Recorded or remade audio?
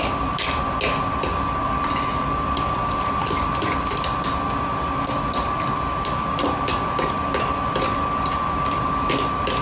recorded